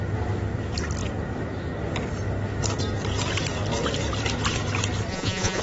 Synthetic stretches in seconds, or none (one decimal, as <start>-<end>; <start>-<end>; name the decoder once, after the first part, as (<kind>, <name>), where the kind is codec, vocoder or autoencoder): 5.1-5.6 (vocoder, Vocos)